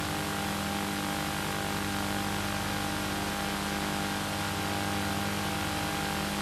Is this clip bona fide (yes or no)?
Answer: yes